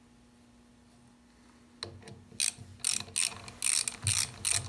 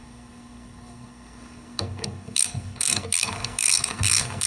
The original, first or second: first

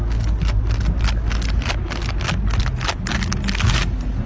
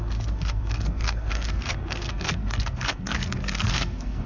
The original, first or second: first